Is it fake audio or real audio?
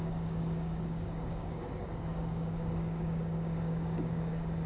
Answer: fake